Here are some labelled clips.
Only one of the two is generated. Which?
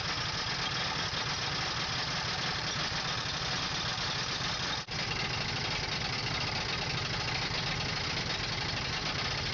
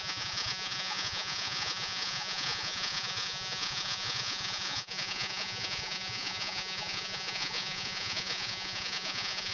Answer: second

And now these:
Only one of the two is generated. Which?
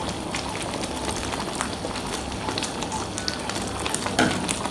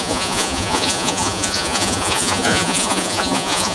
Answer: second